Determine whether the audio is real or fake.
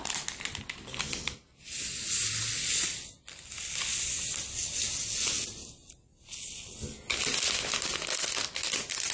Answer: real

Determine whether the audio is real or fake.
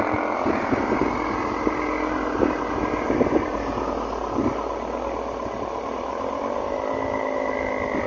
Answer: real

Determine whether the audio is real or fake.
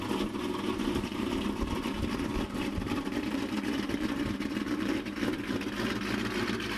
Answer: fake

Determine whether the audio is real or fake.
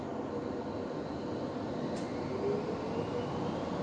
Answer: real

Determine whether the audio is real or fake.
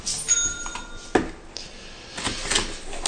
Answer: real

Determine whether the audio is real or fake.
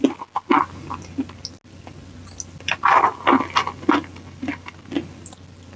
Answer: real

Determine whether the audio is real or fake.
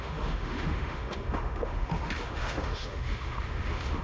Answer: fake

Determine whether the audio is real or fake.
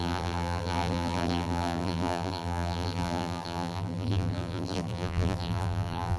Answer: fake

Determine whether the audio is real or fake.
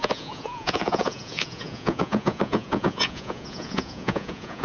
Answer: fake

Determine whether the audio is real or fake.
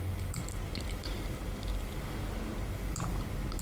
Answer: real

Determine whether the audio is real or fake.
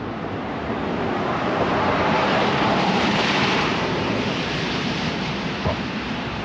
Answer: fake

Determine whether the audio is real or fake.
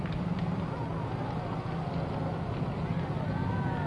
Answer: real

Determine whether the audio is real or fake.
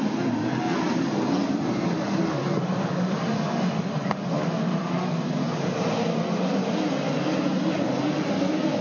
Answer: real